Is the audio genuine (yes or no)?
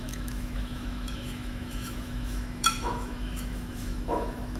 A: no